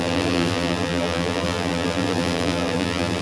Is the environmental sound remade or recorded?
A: remade